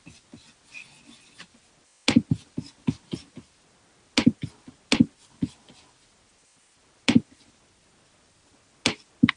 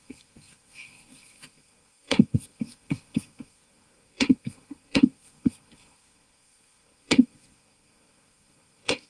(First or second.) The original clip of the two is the first